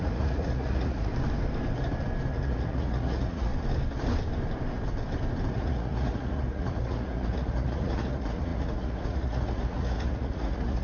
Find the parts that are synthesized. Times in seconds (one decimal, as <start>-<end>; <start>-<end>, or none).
0.0-1.1; 2.3-3.5; 5.5-10.8